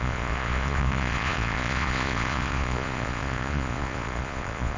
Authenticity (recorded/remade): remade